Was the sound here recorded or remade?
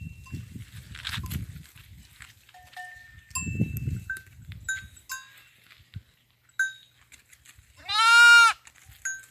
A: recorded